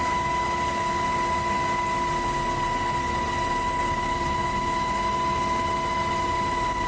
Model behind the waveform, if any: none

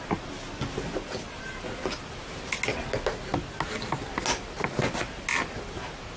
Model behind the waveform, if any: none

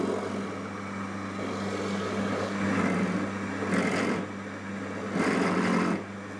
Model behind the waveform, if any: none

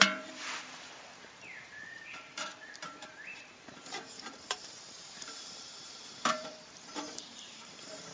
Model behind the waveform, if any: vocoder, BigVGAN v2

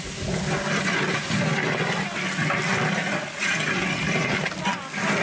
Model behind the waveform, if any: none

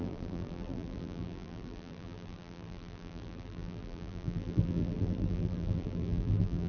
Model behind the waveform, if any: vocoder, BigVGAN v2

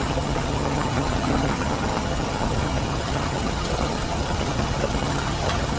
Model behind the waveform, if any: vocoder, HiFi-GAN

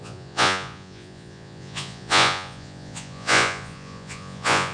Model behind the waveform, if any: vocoder, Vocos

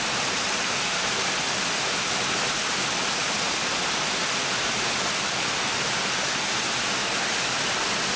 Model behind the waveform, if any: none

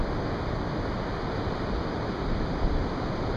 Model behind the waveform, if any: none